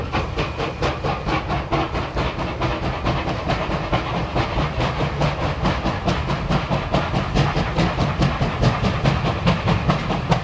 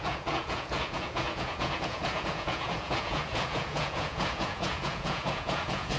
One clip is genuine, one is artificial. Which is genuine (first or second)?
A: first